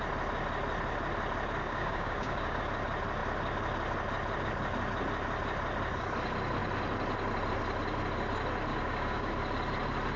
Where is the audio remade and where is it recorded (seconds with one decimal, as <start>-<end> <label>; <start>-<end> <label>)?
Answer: 0.0-1.6 recorded; 1.6-2.6 remade; 2.6-8.7 recorded; 8.7-9.3 remade; 9.3-10.2 recorded